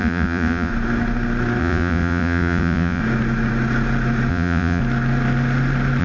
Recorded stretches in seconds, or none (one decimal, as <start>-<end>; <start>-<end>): 0.7-1.6; 3.0-4.3; 4.8-6.0